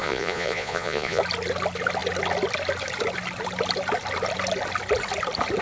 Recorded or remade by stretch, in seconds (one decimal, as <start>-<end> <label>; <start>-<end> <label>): 0.0-1.2 remade; 1.2-5.6 recorded